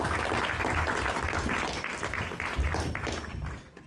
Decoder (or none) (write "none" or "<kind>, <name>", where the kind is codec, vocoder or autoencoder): none